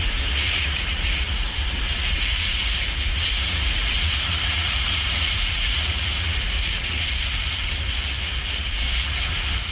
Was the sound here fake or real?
fake